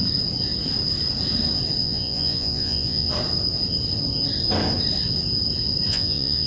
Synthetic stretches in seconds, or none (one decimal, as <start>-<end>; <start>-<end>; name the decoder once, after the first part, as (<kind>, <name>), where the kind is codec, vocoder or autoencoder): 1.8-3.1 (vocoder, Vocos); 5.9-6.5